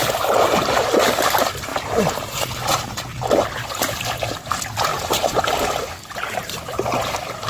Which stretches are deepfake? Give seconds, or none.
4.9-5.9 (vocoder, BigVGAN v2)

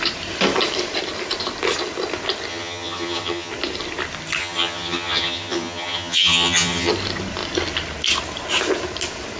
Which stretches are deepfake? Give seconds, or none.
2.5-3.5 (vocoder, HiFi-GAN); 4.4-6.9

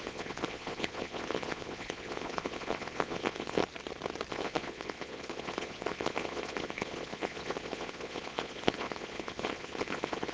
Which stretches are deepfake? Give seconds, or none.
0.0-3.6 (vocoder, Vocos); 4.3-10.3

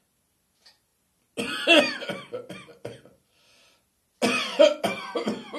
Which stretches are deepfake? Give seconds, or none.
none

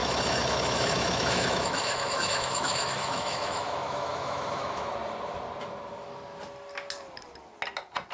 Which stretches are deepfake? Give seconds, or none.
0.0-4.9 (autoencoder, DAC-VAE)

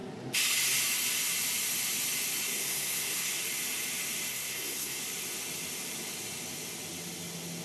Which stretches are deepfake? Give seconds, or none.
2.4-3.4 (codec, SNAC); 4.3-5.0

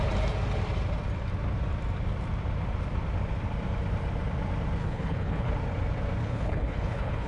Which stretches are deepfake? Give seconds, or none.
4.8-5.5 (codec, HILCodec); 6.2-7.3

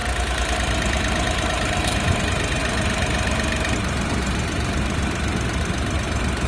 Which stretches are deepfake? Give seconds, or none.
0.0-2.2 (vocoder, BigVGAN v2); 2.6-5.6